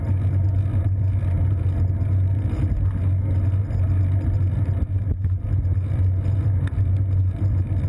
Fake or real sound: real